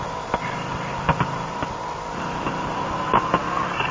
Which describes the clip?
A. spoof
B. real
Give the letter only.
A